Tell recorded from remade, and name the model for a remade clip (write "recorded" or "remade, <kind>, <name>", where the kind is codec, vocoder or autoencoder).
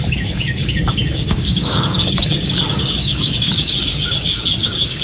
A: remade, codec, DAC